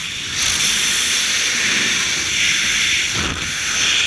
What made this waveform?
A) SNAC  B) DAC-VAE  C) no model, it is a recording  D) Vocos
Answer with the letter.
C